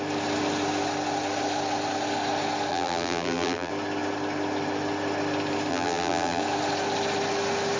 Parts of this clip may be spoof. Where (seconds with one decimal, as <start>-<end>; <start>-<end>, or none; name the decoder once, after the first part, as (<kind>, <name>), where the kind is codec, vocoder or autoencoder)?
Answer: 2.7-3.7 (vocoder, BigVGAN v2); 5.7-6.4